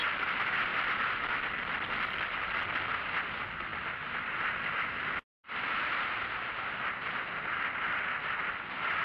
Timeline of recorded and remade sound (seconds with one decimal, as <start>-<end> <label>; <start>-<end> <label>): 0.0-0.7 recorded; 0.7-2.8 remade; 2.8-9.0 recorded